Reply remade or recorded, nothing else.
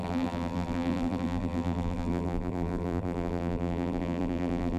remade